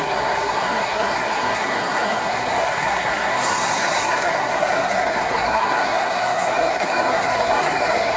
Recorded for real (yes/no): no